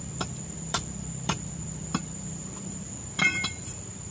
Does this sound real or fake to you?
fake